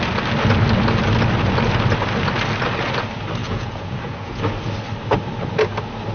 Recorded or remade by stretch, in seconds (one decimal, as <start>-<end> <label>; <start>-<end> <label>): 0.0-3.4 recorded; 3.4-4.4 remade; 4.4-6.1 recorded

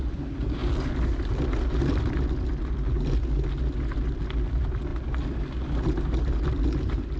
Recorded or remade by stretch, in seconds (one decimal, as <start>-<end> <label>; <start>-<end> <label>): 0.0-7.2 recorded